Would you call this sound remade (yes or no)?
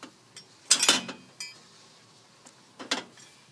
no